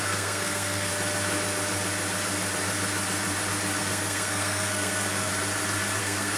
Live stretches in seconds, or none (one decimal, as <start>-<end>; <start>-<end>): 0.9-3.8; 5.3-6.0